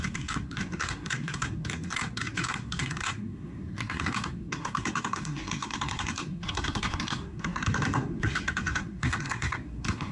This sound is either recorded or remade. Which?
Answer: remade